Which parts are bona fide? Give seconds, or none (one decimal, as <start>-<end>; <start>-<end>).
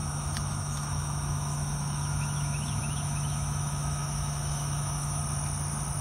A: 5.2-6.0